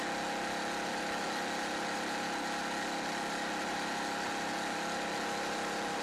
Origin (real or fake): real